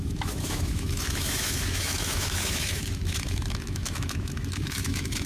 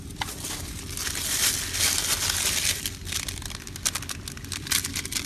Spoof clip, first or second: first